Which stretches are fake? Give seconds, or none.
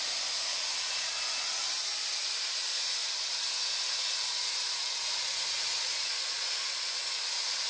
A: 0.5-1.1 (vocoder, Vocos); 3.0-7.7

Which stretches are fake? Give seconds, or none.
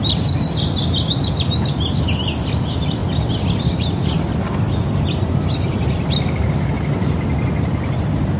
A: none